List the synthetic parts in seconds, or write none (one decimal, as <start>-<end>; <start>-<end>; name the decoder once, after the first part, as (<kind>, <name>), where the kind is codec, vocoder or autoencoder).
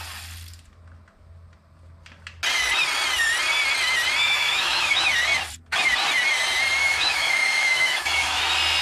4.2-5.1 (autoencoder, DAC-VAE); 6.8-8.4